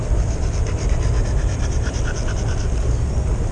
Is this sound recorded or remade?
recorded